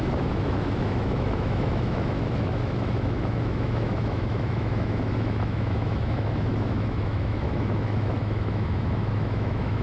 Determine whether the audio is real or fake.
fake